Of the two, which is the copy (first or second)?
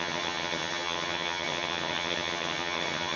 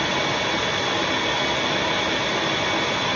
first